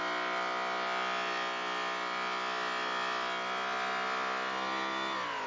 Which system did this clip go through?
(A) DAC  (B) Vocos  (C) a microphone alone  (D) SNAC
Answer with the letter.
C